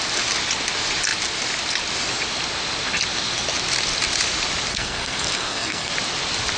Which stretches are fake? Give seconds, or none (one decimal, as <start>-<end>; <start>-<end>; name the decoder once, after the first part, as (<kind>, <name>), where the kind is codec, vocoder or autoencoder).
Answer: 4.7-5.9 (codec, SNAC)